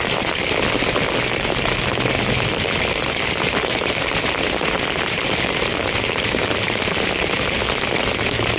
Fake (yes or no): no